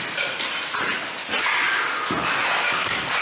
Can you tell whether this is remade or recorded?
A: recorded